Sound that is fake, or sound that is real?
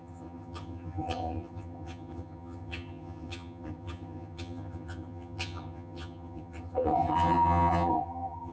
fake